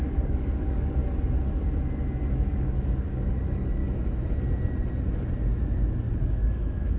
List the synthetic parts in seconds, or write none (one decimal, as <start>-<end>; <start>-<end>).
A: 0.0-1.0; 2.3-3.8; 6.2-7.0